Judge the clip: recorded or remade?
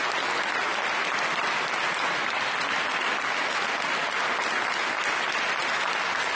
recorded